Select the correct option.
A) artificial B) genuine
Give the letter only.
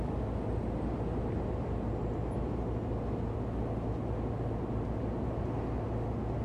B